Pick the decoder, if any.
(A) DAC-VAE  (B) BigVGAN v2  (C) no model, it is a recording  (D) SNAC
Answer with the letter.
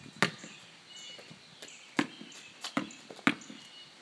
C